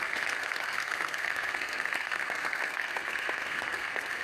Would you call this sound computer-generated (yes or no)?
yes